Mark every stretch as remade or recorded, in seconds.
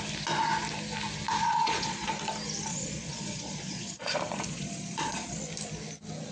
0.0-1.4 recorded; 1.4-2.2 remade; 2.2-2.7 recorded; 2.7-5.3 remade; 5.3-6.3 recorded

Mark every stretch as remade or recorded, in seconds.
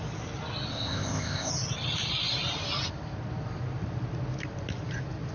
0.0-0.7 recorded; 0.7-1.5 remade; 1.5-5.3 recorded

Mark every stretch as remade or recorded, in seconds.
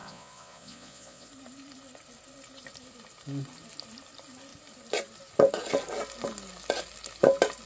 0.0-1.3 remade; 1.3-7.7 recorded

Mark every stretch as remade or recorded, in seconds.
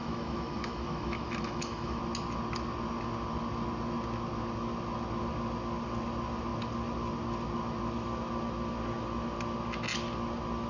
0.0-2.0 remade; 2.0-10.7 recorded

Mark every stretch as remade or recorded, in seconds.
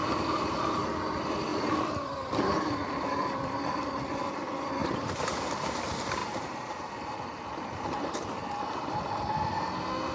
0.0-0.8 remade; 0.8-1.5 recorded; 1.5-3.6 remade; 3.6-4.8 recorded; 4.8-5.5 remade; 5.5-6.2 recorded; 6.2-6.9 remade; 6.9-10.1 recorded